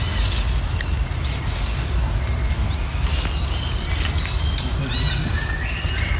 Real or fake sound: real